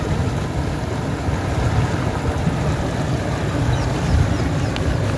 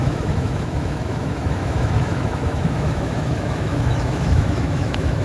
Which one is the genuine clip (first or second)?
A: first